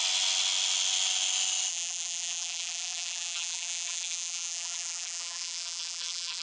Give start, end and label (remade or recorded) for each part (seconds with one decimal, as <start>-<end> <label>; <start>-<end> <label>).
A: 0.0-1.7 recorded; 1.7-6.4 remade